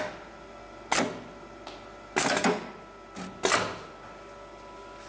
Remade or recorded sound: recorded